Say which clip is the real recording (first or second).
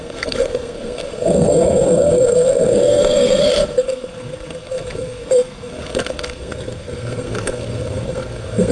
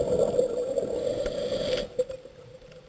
second